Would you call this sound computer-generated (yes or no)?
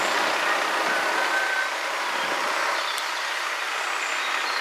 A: no